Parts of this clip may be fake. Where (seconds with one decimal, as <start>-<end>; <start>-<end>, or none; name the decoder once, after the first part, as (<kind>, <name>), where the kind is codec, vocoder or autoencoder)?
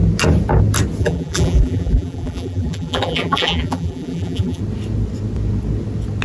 1.0-4.6 (vocoder, BigVGAN v2)